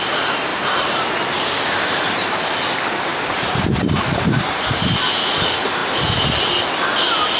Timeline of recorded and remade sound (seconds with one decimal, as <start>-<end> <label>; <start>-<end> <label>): 0.0-0.5 recorded; 0.5-2.3 remade; 2.3-3.1 recorded; 3.1-5.0 remade; 5.0-7.4 recorded